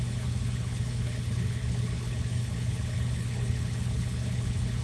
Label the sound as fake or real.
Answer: fake